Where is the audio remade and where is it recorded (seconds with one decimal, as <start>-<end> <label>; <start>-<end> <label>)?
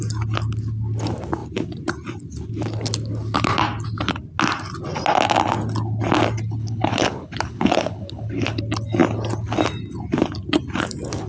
0.0-6.6 recorded; 6.6-8.6 remade; 8.6-11.3 recorded